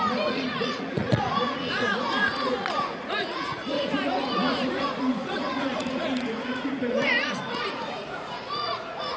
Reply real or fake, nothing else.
fake